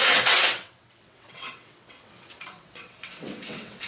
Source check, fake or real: fake